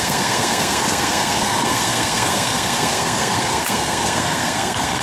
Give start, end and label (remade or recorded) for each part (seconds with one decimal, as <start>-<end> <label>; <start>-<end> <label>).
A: 0.0-5.0 remade